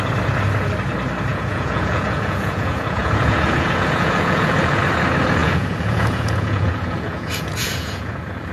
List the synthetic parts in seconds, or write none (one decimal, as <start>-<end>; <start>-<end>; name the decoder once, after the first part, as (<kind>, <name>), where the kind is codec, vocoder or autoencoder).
1.3-4.8 (vocoder, Vocos); 5.4-8.5